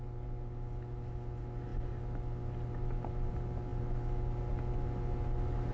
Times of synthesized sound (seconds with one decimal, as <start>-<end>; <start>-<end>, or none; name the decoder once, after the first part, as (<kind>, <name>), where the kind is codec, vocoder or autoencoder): none